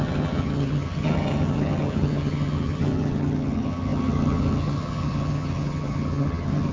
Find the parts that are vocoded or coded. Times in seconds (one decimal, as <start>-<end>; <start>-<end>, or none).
0.0-6.7